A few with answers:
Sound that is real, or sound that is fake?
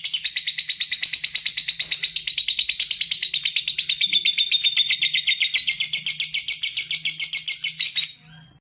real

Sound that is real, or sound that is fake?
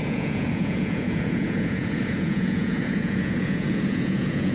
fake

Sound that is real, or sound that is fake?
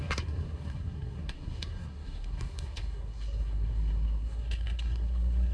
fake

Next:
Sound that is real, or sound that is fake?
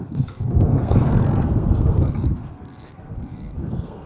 fake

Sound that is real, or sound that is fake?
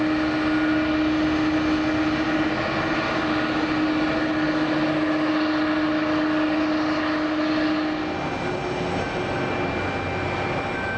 real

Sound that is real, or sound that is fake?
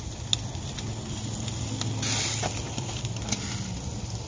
real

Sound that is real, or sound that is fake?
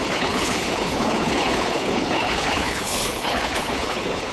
fake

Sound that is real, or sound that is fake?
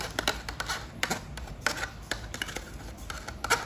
real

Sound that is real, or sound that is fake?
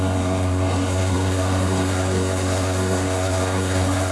fake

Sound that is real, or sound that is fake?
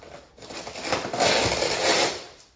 fake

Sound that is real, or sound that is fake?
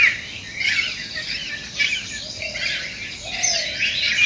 real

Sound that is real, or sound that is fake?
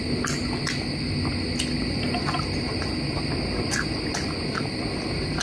real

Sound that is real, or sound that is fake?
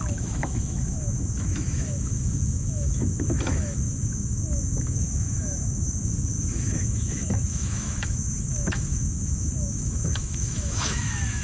fake